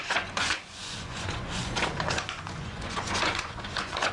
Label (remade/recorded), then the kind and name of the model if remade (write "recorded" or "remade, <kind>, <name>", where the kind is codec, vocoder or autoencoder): remade, vocoder, Vocos